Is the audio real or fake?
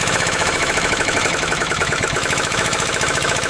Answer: fake